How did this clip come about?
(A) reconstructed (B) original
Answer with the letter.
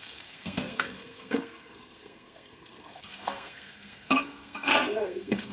A